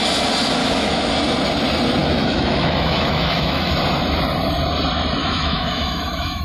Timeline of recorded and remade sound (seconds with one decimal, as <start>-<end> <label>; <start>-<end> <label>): 0.0-0.6 recorded; 0.6-1.1 remade; 1.1-2.0 recorded; 2.0-3.7 remade; 3.7-5.2 recorded; 5.2-6.4 remade